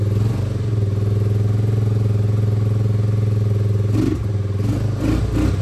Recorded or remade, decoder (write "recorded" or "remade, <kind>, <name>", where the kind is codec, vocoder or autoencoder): recorded